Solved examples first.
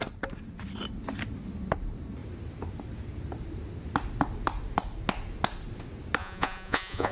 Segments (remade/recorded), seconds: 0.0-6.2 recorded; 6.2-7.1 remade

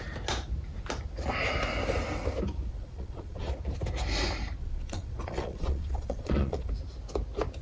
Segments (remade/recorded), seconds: 0.0-2.7 recorded; 2.7-3.5 remade; 3.5-4.6 recorded; 4.6-6.7 remade; 6.7-7.6 recorded